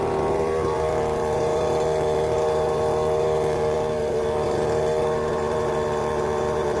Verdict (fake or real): fake